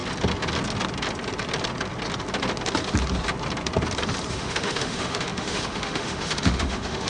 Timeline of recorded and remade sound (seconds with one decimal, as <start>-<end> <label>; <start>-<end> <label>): 0.0-4.3 recorded; 4.3-7.1 remade